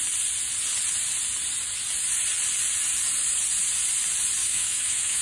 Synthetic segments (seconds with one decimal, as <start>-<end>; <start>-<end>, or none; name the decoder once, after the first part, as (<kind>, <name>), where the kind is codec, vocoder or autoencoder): 4.4-5.2 (autoencoder, DAC-VAE)